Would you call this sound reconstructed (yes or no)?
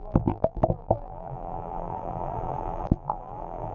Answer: yes